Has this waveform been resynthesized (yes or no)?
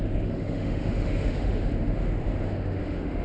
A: yes